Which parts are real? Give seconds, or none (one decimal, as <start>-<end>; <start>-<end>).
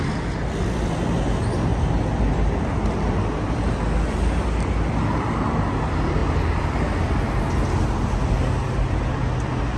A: 0.0-9.8